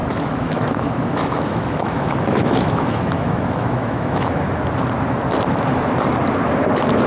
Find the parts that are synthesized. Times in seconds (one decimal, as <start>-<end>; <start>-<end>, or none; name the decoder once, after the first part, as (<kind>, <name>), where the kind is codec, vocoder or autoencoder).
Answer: 0.0-4.3 (autoencoder, DAC-VAE)